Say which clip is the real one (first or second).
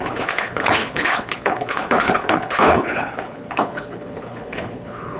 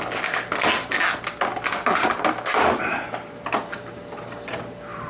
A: second